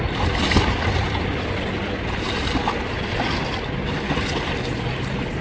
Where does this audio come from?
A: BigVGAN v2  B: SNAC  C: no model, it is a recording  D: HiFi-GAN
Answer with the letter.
C